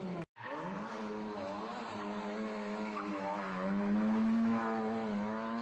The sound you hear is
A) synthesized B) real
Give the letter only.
A